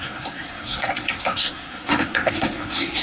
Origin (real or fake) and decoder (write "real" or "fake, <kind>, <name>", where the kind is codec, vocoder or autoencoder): fake, codec, SNAC